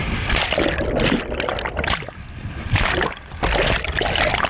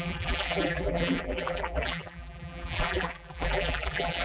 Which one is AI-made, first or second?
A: second